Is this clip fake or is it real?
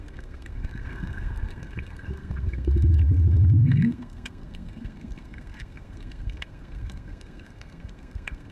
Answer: fake